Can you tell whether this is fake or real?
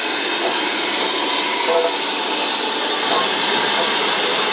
real